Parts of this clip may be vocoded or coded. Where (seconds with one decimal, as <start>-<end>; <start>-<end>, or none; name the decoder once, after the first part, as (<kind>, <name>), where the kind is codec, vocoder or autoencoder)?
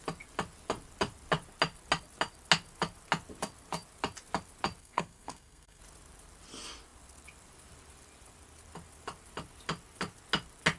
4.8-5.8 (codec, SNAC)